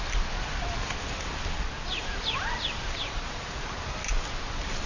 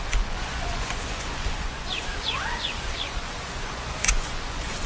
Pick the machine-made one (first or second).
second